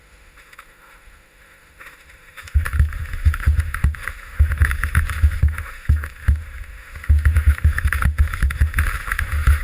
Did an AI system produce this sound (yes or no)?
yes